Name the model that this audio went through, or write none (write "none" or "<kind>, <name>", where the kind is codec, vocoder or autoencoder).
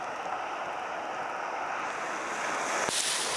none